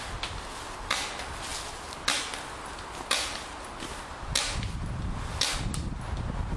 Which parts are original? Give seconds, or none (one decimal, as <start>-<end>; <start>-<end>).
0.0-6.6